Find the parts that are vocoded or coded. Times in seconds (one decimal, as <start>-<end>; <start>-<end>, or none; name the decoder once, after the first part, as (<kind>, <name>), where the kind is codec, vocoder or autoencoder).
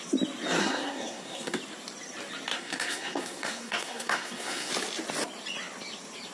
0.6-1.6 (codec, SNAC); 2.5-4.7